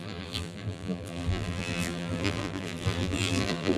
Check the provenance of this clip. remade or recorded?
remade